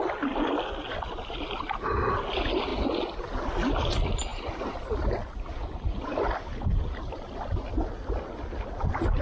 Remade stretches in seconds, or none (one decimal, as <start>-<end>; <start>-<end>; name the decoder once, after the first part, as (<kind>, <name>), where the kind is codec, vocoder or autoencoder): 0.9-1.9 (vocoder, BigVGAN v2); 4.3-4.8